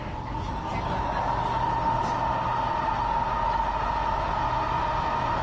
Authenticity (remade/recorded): recorded